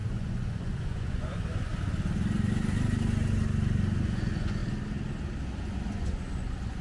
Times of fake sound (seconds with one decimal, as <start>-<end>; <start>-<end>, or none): 0.0-1.7; 4.0-4.6; 5.5-6.8